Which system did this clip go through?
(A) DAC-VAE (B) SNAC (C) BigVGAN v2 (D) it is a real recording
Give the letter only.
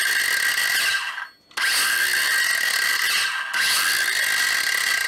D